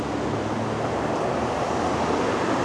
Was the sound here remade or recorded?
recorded